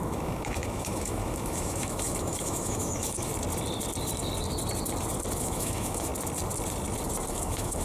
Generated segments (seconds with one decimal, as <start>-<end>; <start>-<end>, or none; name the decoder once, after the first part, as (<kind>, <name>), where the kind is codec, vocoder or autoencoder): 0.0-3.3 (autoencoder, DAC-VAE); 5.4-6.1; 7.3-7.8